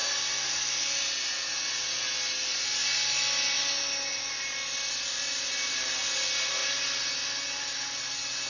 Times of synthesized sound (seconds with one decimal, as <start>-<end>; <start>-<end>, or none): none